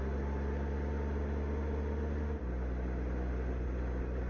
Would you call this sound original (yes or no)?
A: yes